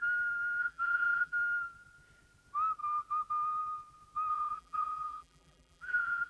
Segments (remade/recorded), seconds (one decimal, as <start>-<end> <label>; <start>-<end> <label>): 0.0-0.6 recorded; 0.6-1.3 remade; 1.3-4.3 recorded; 4.3-6.3 remade

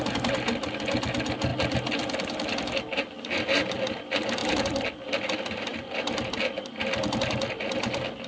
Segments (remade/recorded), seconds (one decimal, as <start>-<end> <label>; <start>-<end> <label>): 0.0-4.4 recorded; 4.4-4.9 remade; 4.9-5.7 recorded; 5.7-6.5 remade; 6.5-8.3 recorded

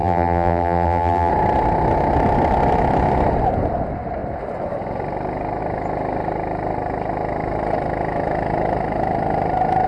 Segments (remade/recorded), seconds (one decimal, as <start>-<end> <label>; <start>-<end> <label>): 0.0-1.3 remade; 1.3-9.9 recorded

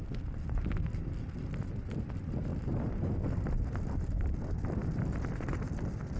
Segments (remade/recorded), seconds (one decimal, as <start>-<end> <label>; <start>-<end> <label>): 0.0-1.6 recorded; 1.6-6.2 remade